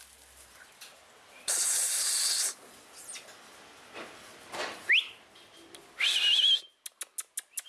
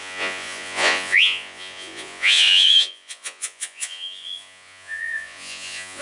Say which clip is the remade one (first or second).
second